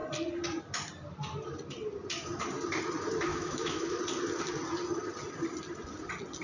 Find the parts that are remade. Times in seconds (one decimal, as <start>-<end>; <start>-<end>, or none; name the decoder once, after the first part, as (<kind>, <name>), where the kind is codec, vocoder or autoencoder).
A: 3.3-4.0 (autoencoder, DAC-VAE)